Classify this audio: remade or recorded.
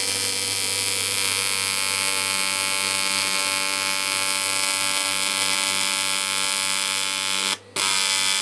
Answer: recorded